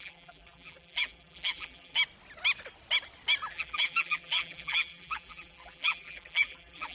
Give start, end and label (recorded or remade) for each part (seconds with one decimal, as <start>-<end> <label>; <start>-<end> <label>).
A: 0.0-2.0 remade; 2.0-3.5 recorded; 3.5-6.9 remade